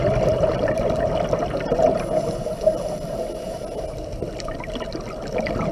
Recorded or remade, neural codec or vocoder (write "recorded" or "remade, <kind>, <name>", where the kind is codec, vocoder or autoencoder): recorded